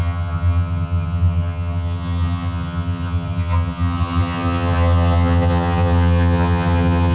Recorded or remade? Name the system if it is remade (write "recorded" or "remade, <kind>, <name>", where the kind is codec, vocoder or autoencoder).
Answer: remade, vocoder, HiFi-GAN